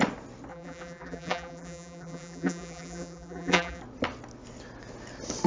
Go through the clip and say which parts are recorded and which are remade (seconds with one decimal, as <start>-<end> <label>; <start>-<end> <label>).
0.0-0.5 recorded; 0.5-3.8 remade; 3.8-5.5 recorded